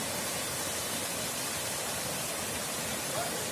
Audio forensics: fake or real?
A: real